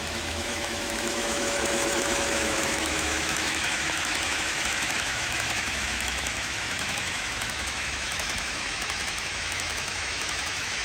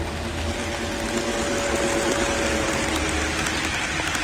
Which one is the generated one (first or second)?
first